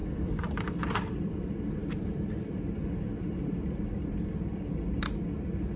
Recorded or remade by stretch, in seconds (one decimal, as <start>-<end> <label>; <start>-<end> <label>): 0.0-1.3 remade; 1.3-2.8 recorded; 2.8-5.1 remade; 5.1-5.8 recorded